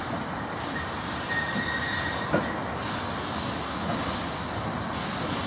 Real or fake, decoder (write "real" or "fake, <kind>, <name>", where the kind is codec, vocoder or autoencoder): real